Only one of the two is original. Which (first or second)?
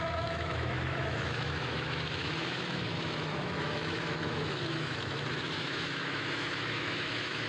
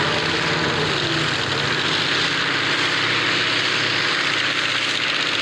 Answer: second